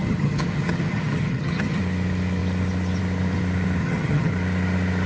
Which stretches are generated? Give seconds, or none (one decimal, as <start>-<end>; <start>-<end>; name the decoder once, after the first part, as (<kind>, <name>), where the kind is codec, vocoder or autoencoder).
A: 0.0-1.8 (vocoder, HiFi-GAN); 3.8-4.3